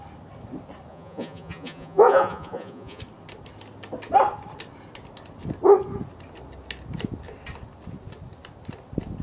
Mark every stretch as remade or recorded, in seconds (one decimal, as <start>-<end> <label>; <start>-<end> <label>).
0.0-0.9 recorded; 0.9-3.0 remade; 3.0-9.2 recorded